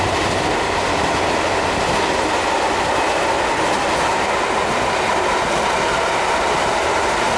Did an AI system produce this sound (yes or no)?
no